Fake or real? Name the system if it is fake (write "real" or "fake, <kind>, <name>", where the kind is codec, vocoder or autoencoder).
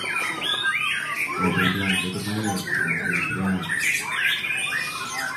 real